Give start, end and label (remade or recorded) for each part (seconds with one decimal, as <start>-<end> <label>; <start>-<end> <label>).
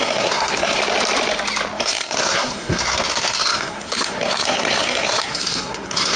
0.0-0.8 remade; 0.8-1.8 recorded; 1.8-6.2 remade